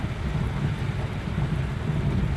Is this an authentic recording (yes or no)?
yes